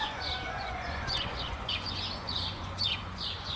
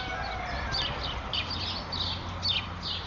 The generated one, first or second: first